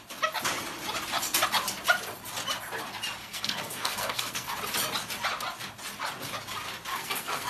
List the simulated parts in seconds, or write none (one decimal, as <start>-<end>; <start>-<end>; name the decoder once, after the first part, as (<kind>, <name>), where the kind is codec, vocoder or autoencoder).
3.2-4.5 (codec, SNAC); 6.9-7.5